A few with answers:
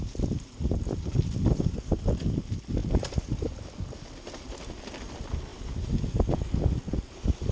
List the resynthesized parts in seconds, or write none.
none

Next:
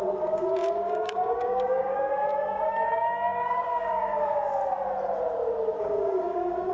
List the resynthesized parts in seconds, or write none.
0.0-4.6 (codec, DAC); 5.8-6.7

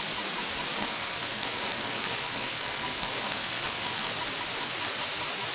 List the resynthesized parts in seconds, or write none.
0.8-4.1 (codec, SNAC)